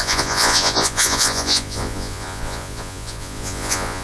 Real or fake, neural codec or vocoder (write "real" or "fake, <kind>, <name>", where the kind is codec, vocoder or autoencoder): fake, vocoder, Vocos